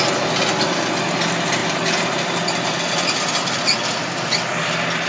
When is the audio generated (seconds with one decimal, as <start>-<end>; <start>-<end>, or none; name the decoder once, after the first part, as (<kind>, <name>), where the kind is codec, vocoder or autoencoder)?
none